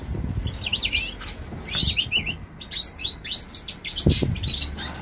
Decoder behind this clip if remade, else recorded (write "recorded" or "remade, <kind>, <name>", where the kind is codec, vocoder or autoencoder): recorded